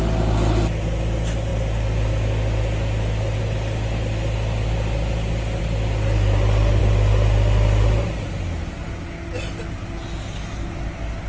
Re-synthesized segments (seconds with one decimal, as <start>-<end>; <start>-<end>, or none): none